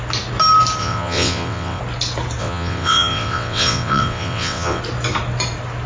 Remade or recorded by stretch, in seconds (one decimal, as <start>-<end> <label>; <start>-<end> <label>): 0.0-0.8 recorded; 0.8-1.8 remade; 1.8-2.4 recorded; 2.4-4.8 remade; 4.8-5.9 recorded